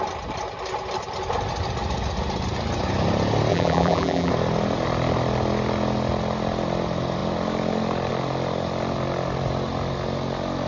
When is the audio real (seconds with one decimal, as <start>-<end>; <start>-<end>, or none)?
0.0-3.5; 4.3-10.7